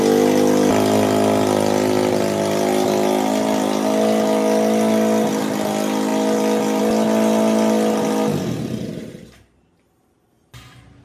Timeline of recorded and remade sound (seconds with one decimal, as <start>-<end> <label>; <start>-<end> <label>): 0.0-11.0 recorded